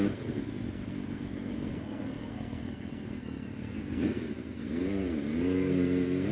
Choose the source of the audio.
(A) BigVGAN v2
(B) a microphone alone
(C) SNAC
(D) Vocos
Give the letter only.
C